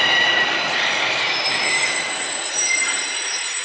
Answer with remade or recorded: remade